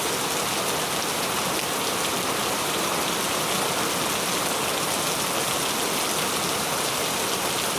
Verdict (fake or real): real